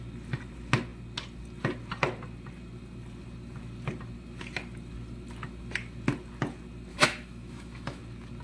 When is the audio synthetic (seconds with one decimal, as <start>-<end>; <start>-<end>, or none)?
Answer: 6.9-8.0